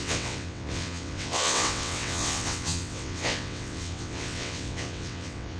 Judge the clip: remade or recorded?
remade